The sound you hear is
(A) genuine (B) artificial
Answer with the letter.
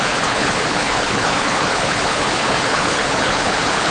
B